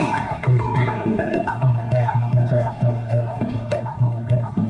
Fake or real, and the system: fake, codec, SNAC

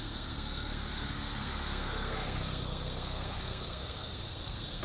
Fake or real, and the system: fake, codec, SNAC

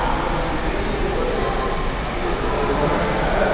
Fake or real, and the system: real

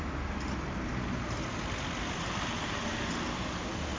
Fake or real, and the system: real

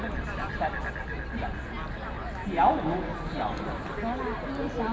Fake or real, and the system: real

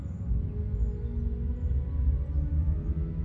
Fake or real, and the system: real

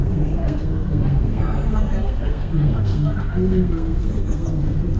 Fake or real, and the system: fake, codec, SNAC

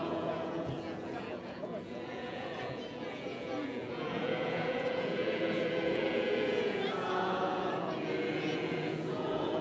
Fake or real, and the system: fake, vocoder, Vocos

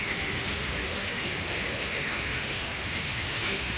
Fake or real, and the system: fake, autoencoder, DAC-VAE